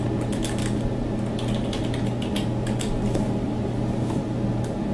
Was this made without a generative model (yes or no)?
yes